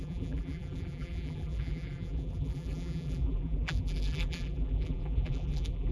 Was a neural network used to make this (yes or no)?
yes